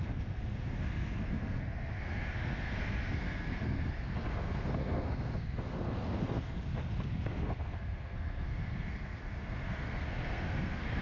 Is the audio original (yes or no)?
no